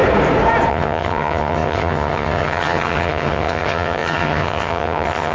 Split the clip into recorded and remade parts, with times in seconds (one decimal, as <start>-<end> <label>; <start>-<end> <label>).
0.0-0.7 recorded; 0.7-5.3 remade